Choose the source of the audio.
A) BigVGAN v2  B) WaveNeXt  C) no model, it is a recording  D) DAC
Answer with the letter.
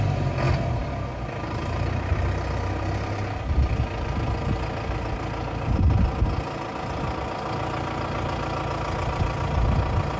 C